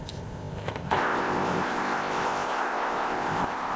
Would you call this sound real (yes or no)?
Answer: no